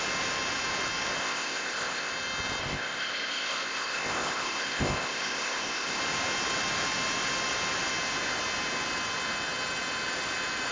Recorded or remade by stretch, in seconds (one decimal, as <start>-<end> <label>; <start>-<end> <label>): 0.0-1.2 recorded; 1.2-2.1 remade; 2.1-2.6 recorded; 2.6-6.0 remade; 6.0-10.7 recorded